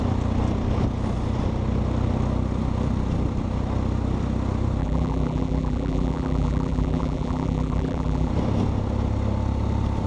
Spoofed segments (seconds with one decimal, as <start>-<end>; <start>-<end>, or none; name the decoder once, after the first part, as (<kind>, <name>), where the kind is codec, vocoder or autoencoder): 4.8-8.3 (vocoder, BigVGAN v2)